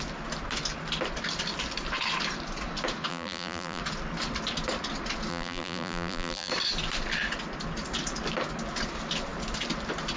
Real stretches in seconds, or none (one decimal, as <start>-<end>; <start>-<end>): 0.0-3.1; 3.8-5.3; 6.5-10.2